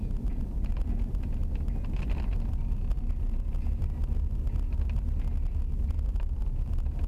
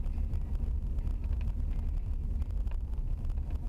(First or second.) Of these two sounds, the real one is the first